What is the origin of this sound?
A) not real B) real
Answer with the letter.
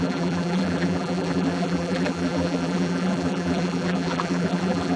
A